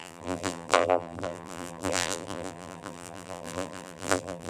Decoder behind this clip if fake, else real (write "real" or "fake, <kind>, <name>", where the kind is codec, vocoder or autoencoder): fake, vocoder, BigVGAN v2